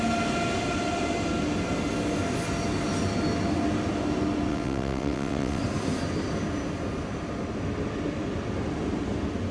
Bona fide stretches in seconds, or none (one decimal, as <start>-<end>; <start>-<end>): 0.0-4.5; 5.6-9.5